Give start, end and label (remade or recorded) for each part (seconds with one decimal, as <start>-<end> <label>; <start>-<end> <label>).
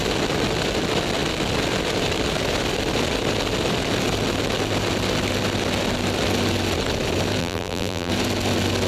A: 0.0-7.4 recorded; 7.4-8.1 remade; 8.1-8.9 recorded